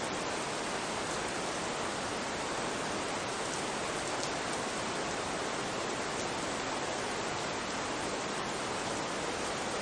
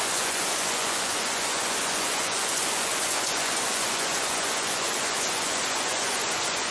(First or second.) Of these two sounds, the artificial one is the second